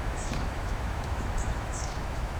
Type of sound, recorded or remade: remade